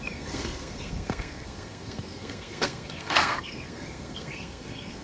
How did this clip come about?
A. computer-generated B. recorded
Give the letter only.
A